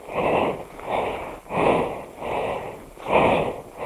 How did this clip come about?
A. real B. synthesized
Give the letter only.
A